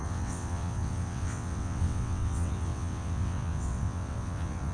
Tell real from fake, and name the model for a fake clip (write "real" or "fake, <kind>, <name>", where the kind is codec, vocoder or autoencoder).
fake, vocoder, WaveNeXt